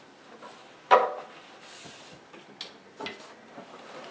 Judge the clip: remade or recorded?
recorded